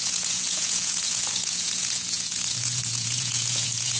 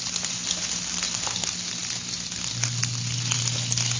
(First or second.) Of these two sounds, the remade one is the first